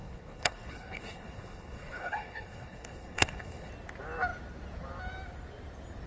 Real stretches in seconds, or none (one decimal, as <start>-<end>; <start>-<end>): 3.7-6.1

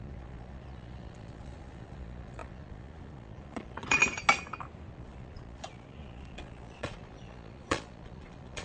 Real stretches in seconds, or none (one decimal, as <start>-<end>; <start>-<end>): 4.0-4.9

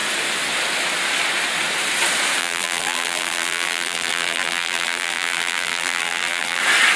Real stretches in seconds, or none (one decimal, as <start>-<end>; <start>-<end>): 0.0-2.4; 6.6-7.0

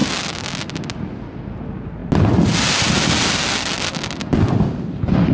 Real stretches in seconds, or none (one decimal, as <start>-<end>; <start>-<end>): 0.0-5.3

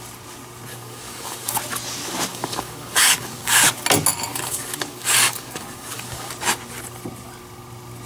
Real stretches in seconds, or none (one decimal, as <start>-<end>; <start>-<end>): 0.0-0.7; 1.5-2.3; 3.7-4.3; 6.3-8.1

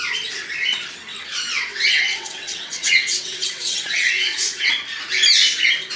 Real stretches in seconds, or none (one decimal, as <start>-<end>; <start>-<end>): 0.0-1.1; 4.7-6.0